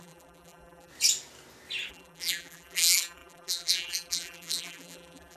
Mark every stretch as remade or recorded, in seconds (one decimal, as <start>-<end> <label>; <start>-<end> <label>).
0.0-0.9 remade; 0.9-1.9 recorded; 1.9-5.4 remade